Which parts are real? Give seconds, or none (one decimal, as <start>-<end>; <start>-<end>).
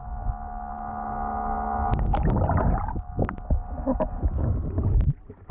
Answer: 0.0-5.5